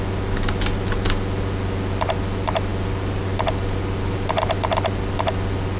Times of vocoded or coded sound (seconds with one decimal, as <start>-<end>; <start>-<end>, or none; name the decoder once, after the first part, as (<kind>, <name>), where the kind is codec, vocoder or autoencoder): none